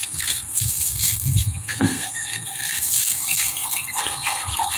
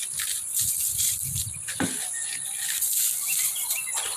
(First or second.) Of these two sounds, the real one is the second